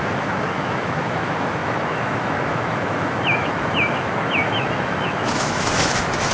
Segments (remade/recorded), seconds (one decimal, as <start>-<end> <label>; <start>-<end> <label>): 0.0-6.3 remade